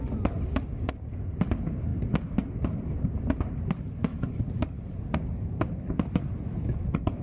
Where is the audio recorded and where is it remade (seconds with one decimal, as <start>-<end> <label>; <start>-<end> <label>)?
0.0-1.9 recorded; 1.9-3.0 remade; 3.0-4.1 recorded; 4.1-5.8 remade; 5.8-7.2 recorded